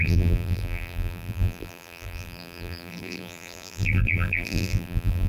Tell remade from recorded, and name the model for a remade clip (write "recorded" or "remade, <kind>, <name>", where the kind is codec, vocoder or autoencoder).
remade, vocoder, BigVGAN v2